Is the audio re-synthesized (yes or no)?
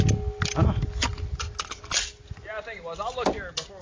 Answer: no